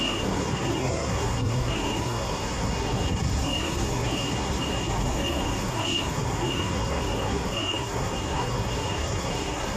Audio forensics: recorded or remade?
remade